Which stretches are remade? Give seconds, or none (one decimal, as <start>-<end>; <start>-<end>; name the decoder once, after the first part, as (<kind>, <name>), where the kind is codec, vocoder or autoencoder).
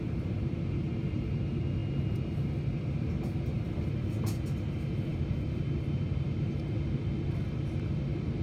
none